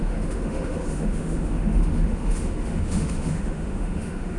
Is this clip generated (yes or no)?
yes